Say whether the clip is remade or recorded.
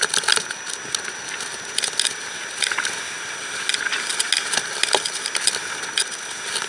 recorded